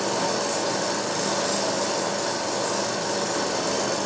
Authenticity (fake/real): real